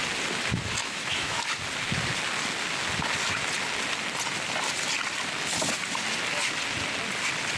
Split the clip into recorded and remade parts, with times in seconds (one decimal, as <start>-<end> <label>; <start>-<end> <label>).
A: 0.0-0.8 recorded; 0.8-1.4 remade; 1.4-7.6 recorded